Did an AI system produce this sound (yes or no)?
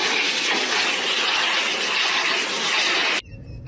no